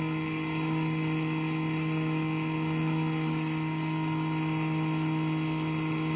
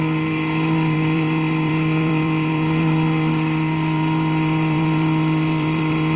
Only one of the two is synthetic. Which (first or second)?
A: second